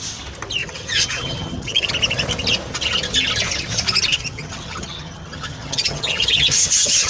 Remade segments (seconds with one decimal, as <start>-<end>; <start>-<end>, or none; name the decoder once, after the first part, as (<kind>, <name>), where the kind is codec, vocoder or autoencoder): 0.6-1.9 (vocoder, HiFi-GAN); 4.1-7.1